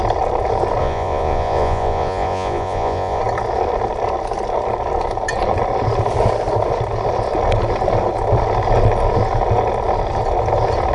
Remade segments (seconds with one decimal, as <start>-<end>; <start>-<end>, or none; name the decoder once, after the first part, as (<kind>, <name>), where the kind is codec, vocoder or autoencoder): 0.8-3.2 (vocoder, Vocos)